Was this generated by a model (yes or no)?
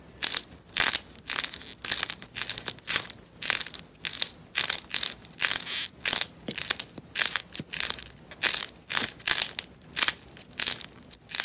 no